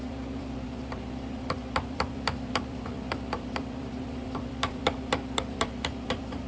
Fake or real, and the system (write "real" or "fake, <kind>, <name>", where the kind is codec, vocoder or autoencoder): fake, vocoder, BigVGAN v2